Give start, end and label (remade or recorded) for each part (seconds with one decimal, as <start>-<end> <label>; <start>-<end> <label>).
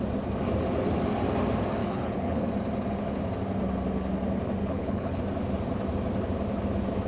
0.0-1.8 recorded; 1.8-2.5 remade; 2.5-4.6 recorded; 4.6-5.2 remade; 5.2-7.1 recorded